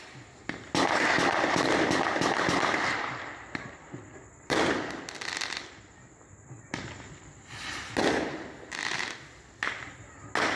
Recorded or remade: recorded